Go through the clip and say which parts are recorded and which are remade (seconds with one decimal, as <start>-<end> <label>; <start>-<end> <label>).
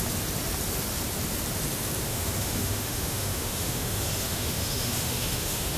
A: 0.0-2.1 recorded; 2.1-5.8 remade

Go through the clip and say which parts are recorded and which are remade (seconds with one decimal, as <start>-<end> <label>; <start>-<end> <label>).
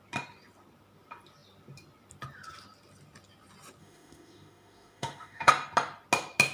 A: 0.0-3.8 recorded; 3.8-5.5 remade; 5.5-6.5 recorded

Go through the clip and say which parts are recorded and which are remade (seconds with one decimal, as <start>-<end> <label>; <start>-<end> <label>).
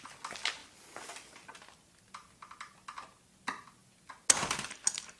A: 0.0-5.2 recorded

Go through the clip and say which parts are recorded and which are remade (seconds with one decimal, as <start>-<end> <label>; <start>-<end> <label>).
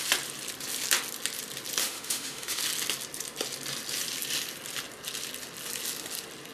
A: 0.0-1.8 recorded; 1.8-2.6 remade; 2.6-6.5 recorded